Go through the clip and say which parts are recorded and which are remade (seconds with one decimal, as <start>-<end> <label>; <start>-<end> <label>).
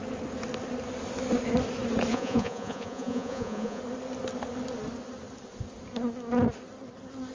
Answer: 0.0-2.1 recorded; 2.1-3.8 remade; 3.8-7.3 recorded